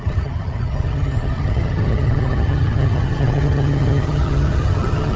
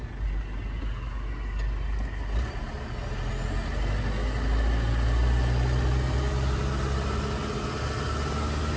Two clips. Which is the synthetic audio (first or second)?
first